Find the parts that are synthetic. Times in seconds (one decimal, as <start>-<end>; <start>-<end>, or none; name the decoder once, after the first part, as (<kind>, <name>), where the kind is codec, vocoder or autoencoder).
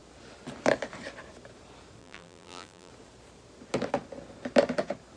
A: 2.0-2.9 (vocoder, BigVGAN v2)